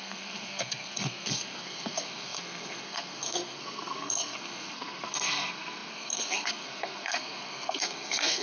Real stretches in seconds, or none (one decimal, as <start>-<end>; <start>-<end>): none